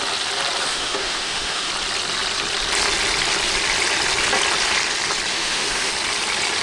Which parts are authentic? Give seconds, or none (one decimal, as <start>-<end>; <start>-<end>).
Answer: 0.0-0.7; 1.7-5.3; 5.9-6.6